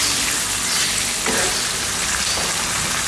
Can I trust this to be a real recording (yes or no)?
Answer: yes